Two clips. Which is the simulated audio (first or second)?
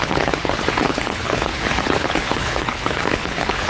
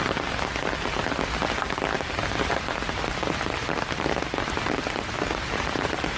first